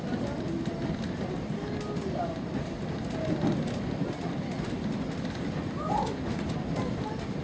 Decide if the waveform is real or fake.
real